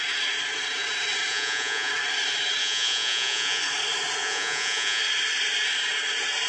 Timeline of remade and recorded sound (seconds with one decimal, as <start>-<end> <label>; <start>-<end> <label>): 0.0-1.3 recorded; 1.3-1.9 remade; 1.9-2.6 recorded; 2.6-3.6 remade; 3.6-4.2 recorded; 4.2-5.0 remade; 5.0-6.5 recorded